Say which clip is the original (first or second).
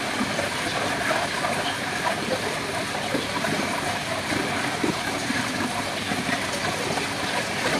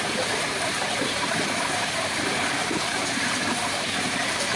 first